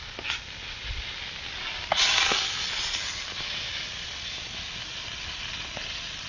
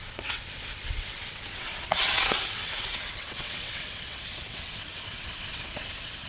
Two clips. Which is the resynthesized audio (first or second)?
second